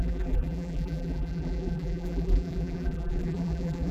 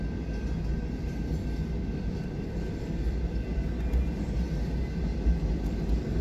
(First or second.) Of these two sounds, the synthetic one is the first